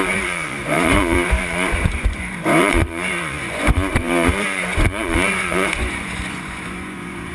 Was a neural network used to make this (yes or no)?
yes